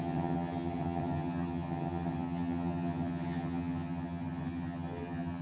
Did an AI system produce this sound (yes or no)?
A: yes